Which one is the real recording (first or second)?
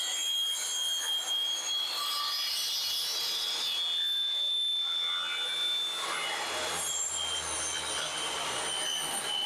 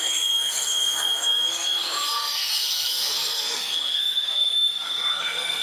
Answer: first